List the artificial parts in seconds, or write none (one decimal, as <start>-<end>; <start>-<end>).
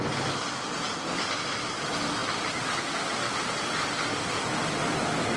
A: none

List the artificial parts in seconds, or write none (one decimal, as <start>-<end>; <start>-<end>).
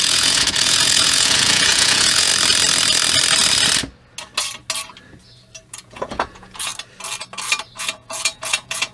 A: 0.0-2.3; 5.7-6.7; 7.8-8.9